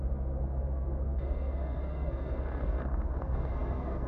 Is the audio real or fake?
fake